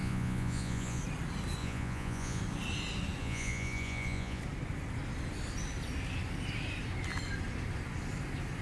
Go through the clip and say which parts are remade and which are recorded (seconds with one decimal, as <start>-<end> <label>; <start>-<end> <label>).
0.0-1.0 remade; 1.0-1.6 recorded; 1.6-2.4 remade; 2.4-3.2 recorded; 3.2-4.4 remade; 4.4-8.6 recorded